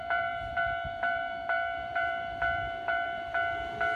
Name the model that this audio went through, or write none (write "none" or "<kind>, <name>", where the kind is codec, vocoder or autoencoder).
vocoder, BigVGAN v2